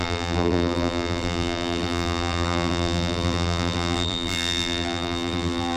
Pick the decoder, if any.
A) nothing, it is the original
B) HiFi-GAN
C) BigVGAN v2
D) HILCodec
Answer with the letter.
C